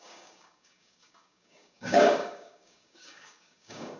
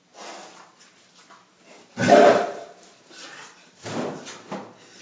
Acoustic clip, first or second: second